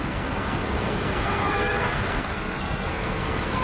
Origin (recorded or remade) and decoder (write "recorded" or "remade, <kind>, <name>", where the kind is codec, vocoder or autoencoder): remade, codec, SNAC